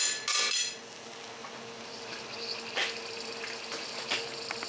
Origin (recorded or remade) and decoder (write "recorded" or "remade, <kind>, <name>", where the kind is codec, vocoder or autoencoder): recorded